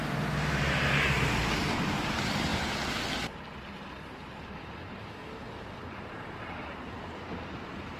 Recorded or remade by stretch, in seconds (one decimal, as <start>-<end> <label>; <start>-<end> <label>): 0.0-0.6 recorded; 0.6-2.5 remade; 2.5-4.6 recorded; 4.6-5.2 remade; 5.2-6.2 recorded; 6.2-8.0 remade